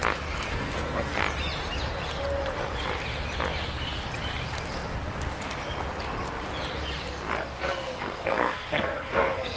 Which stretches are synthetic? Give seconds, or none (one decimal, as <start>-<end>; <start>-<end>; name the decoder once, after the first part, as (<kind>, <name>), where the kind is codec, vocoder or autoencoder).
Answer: 0.5-1.2 (codec, SNAC); 7.5-9.6